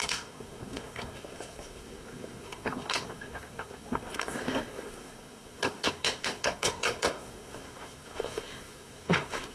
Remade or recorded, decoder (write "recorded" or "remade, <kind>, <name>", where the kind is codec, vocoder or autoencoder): remade, codec, SNAC